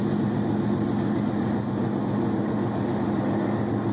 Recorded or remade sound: recorded